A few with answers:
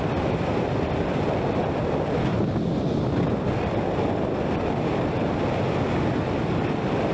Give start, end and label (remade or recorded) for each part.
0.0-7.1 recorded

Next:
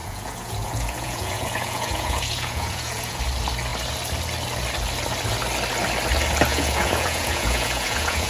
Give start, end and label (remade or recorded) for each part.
0.0-3.2 remade; 3.2-6.5 recorded; 6.5-8.3 remade

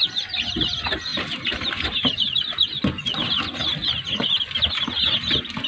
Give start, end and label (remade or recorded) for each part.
0.0-1.1 recorded; 1.1-2.0 remade; 2.0-5.7 recorded